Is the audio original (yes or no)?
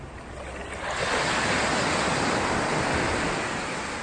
yes